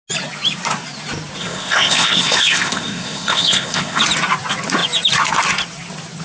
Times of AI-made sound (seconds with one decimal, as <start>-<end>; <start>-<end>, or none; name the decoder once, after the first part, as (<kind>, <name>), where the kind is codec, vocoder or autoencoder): 1.4-4.0 (codec, ZipCodec)